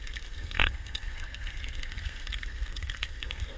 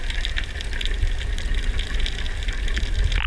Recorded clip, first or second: second